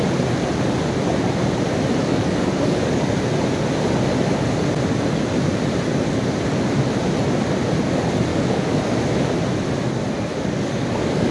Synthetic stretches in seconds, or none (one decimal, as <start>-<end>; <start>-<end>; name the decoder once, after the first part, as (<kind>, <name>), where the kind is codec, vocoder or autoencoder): 2.0-3.1 (codec, DAC); 8.3-8.8; 10.3-11.3